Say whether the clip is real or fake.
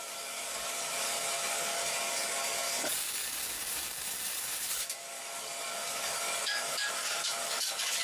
fake